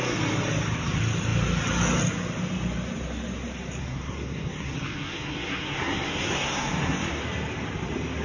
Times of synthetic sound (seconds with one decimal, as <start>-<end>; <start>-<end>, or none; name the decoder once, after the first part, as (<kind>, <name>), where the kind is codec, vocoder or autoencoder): 3.8-7.2 (codec, SNAC)